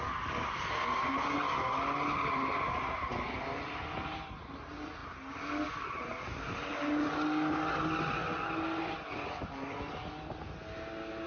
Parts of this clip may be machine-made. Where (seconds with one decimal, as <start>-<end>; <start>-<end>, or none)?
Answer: none